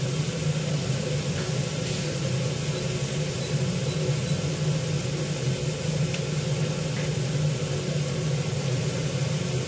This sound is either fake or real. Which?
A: real